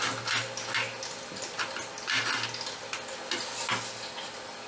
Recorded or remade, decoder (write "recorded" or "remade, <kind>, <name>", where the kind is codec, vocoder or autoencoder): recorded